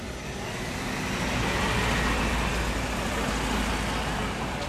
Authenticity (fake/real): real